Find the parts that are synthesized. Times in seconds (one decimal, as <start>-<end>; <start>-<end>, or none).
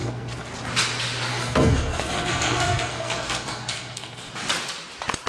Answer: 0.0-0.5; 1.3-4.3